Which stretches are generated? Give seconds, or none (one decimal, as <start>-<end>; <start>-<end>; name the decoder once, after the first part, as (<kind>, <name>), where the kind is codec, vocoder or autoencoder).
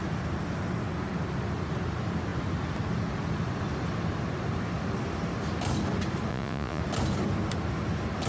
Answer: 6.3-6.8 (vocoder, Vocos)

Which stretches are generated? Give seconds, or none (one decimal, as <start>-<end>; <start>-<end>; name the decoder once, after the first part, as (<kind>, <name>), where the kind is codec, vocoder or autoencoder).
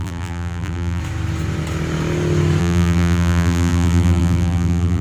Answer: 0.0-1.0 (vocoder, BigVGAN v2); 2.6-5.0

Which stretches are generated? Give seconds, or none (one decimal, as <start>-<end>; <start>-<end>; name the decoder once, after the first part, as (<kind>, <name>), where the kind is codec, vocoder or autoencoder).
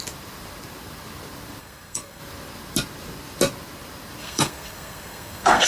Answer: 1.6-2.2 (codec, SNAC); 4.2-5.7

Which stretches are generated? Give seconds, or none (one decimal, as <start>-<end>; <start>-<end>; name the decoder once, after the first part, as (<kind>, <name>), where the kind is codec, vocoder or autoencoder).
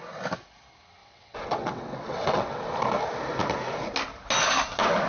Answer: 1.0-2.6 (vocoder, WaveNeXt)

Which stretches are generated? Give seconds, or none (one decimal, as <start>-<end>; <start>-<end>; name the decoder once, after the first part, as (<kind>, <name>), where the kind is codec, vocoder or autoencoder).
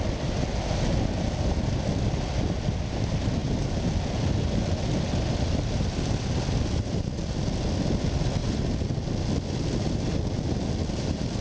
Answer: none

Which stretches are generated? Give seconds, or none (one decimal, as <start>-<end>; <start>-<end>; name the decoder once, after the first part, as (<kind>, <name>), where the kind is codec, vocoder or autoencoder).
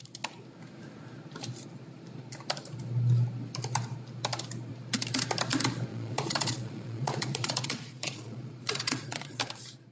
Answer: 5.9-9.4 (vocoder, Vocos)